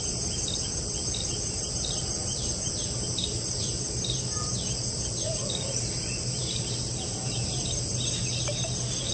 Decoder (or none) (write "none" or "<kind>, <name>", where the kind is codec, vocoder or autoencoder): vocoder, BigVGAN v2